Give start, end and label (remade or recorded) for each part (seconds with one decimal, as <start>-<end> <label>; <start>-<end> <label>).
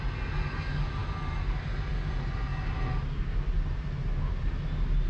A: 0.0-5.1 recorded